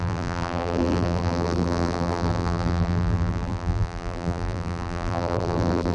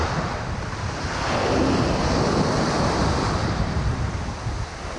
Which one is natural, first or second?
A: second